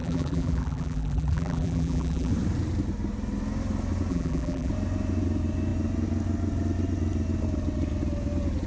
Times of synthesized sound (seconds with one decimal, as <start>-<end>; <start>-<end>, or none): 0.0-2.3; 4.1-4.7